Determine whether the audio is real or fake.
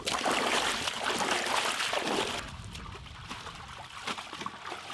real